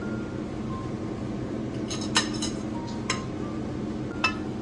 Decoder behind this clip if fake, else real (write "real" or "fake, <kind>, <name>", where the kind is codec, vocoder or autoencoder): real